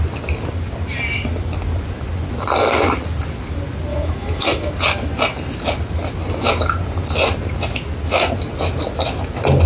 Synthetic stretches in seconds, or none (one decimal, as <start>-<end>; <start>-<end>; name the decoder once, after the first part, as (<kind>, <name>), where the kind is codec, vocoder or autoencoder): 3.9-4.7 (autoencoder, DAC-VAE)

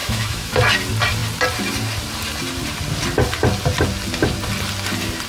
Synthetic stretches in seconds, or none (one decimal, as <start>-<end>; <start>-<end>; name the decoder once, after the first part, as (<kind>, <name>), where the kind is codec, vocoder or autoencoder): 0.0-0.6 (autoencoder, DAC-VAE)

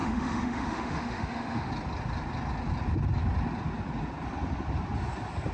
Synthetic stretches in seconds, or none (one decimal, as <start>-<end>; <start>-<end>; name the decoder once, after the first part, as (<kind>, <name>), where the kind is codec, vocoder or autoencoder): 0.0-1.7 (autoencoder, DAC-VAE)

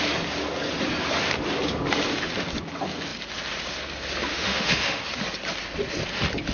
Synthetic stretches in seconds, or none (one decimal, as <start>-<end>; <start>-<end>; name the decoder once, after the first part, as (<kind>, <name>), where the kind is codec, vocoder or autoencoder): 4.3-5.0 (autoencoder, DAC-VAE)

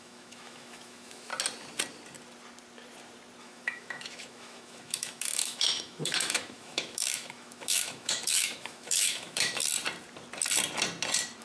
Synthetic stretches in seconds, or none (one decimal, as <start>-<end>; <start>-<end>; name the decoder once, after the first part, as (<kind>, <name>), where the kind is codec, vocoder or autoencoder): 0.0-1.3 (autoencoder, DAC-VAE); 3.4-9.6

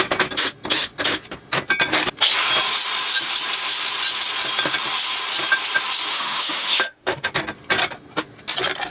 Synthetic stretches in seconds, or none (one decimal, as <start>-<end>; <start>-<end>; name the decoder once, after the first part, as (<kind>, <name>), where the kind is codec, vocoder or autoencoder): 6.1-7.3 (autoencoder, DAC-VAE)

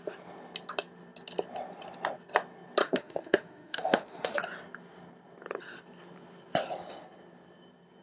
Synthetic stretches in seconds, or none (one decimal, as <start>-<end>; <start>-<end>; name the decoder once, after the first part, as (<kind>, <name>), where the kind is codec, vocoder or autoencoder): 2.8-4.4 (autoencoder, DAC-VAE)